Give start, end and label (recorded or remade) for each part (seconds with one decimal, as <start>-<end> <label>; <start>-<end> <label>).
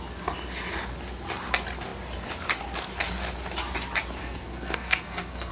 0.0-4.2 recorded; 4.2-5.5 remade